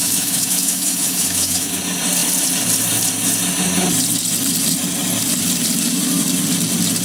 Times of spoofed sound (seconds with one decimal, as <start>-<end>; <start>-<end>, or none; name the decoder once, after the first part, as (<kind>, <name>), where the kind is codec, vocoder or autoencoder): 0.0-1.8 (autoencoder, DAC-VAE)